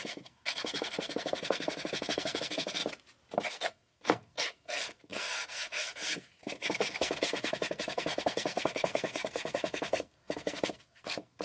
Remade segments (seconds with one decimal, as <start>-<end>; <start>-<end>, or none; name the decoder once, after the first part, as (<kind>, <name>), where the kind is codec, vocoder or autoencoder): 0.0-2.8 (codec, SNAC); 3.5-11.4